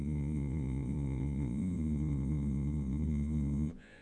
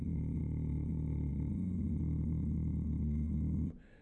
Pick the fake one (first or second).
first